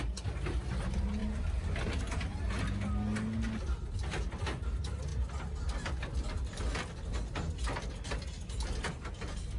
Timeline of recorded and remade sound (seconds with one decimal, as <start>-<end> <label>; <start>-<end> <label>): 0.0-1.2 recorded; 1.2-2.0 remade; 2.0-9.6 recorded